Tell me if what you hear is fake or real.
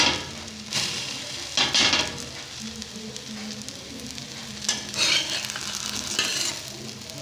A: real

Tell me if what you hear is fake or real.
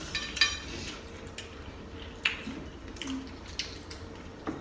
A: real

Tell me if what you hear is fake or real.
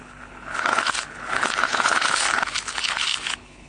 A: fake